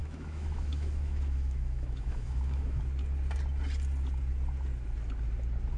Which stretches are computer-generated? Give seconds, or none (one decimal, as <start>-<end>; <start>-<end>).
0.0-2.8